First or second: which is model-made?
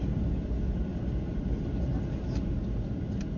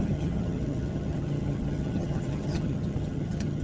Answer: second